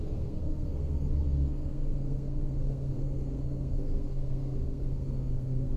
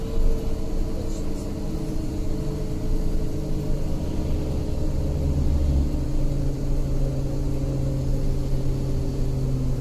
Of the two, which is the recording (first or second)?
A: second